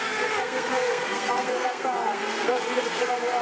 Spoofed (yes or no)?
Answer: yes